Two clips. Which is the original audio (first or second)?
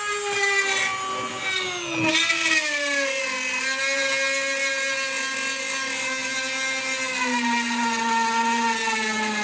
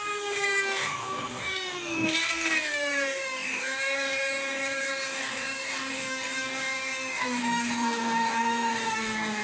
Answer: first